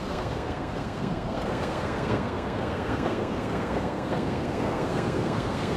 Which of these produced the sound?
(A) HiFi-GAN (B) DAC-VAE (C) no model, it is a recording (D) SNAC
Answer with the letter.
D